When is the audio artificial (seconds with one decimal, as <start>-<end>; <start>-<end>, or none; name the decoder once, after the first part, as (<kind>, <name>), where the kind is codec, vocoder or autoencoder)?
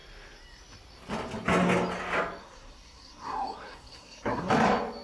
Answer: 2.4-4.5 (codec, SNAC)